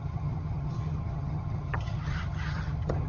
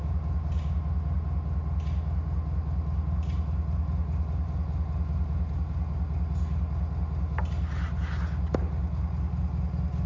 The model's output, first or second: first